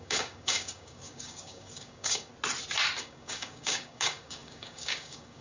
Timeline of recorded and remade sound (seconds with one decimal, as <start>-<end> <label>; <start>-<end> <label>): 0.0-2.3 remade; 2.3-3.0 recorded; 3.0-5.4 remade